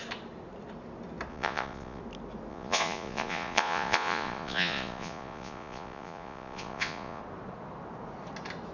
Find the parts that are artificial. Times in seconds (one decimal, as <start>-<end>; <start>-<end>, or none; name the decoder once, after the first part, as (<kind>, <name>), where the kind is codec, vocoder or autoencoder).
1.3-2.0 (vocoder, Vocos); 2.5-7.2